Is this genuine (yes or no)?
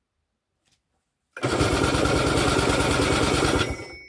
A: yes